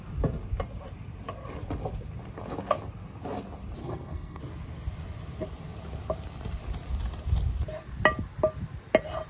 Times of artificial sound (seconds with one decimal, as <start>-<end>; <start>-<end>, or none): 3.8-4.4